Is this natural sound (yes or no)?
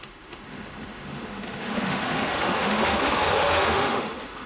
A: no